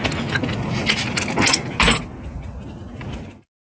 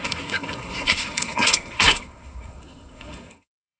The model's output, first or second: second